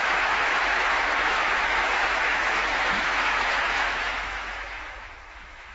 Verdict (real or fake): fake